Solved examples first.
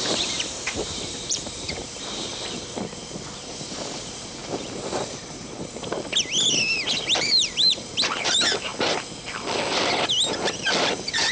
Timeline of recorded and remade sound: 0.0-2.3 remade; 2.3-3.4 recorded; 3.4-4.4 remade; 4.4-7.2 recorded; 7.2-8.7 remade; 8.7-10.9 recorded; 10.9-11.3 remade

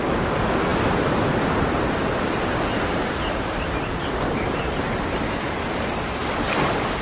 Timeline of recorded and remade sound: 0.0-0.7 remade; 0.7-2.7 recorded; 2.7-7.0 remade

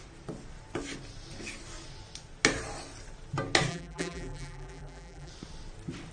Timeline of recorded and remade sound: 0.0-3.7 recorded; 3.7-5.3 remade; 5.3-6.1 recorded

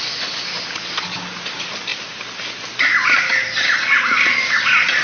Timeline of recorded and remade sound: 0.0-5.0 recorded

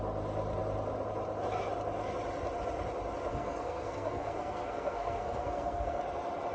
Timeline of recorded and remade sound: 0.0-3.3 recorded; 3.3-6.0 remade; 6.0-6.5 recorded

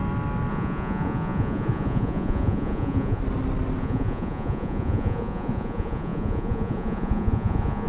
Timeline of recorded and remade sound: 0.0-0.5 recorded; 0.5-3.2 remade; 3.2-3.8 recorded; 3.8-7.9 remade